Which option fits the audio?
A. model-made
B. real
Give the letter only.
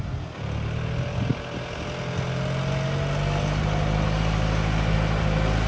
B